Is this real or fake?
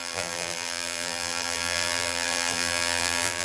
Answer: fake